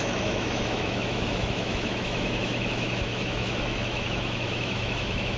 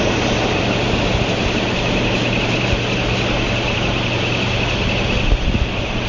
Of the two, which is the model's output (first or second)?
first